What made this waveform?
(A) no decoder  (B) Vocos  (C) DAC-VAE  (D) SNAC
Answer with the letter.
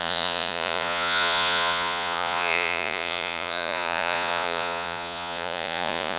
B